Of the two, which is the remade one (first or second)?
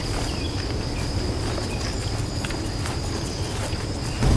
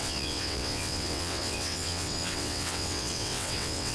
second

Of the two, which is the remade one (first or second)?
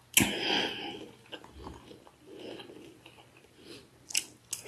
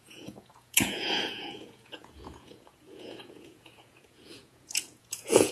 second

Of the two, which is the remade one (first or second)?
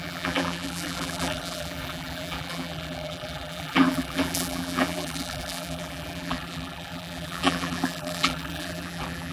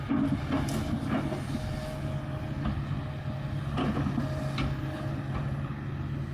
first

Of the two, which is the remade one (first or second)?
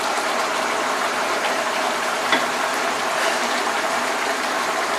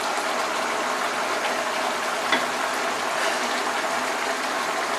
first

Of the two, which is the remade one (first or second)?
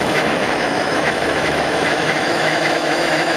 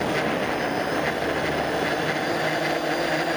first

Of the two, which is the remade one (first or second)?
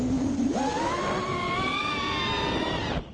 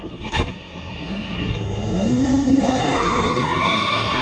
second